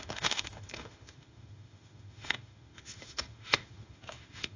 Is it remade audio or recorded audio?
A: remade